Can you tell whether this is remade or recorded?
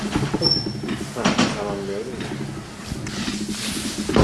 recorded